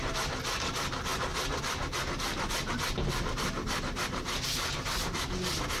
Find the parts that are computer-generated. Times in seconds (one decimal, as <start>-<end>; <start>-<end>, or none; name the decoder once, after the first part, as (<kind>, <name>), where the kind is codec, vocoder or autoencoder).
none